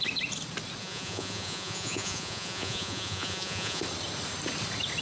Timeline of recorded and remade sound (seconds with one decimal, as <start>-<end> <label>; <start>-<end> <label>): 0.0-0.8 recorded; 0.8-3.8 remade; 3.8-5.0 recorded